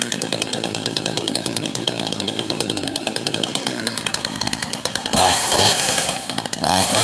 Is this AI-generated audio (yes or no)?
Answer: yes